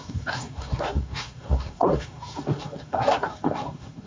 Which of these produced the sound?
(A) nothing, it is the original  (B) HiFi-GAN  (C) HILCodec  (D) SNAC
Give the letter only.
D